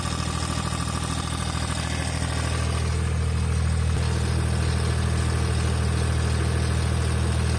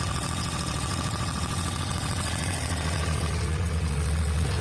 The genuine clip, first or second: first